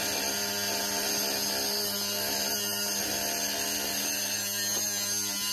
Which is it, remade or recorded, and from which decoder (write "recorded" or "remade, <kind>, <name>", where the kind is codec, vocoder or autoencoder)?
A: recorded